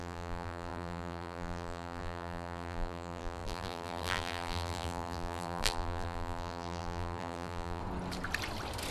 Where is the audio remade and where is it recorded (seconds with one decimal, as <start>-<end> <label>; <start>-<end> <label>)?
0.0-7.8 remade; 7.8-8.9 recorded